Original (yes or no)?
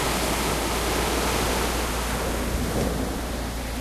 yes